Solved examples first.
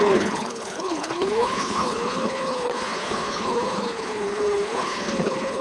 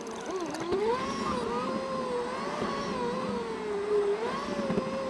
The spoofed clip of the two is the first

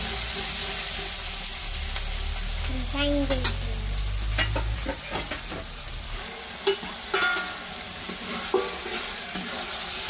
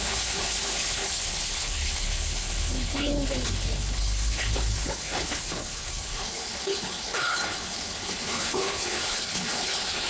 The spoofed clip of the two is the second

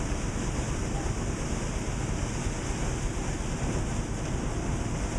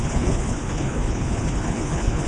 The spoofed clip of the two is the second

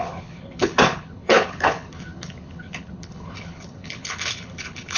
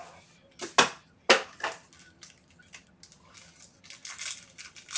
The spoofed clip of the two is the first